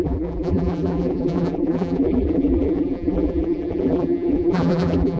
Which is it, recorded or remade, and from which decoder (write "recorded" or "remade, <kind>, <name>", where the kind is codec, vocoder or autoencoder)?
remade, vocoder, BigVGAN v2